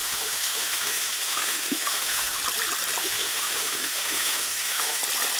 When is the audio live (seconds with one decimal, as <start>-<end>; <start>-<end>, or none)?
2.4-3.0; 5.0-5.4